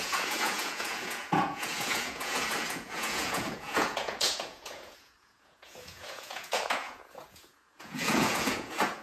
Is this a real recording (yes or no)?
no